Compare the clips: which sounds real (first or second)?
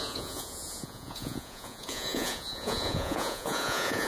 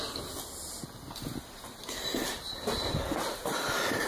second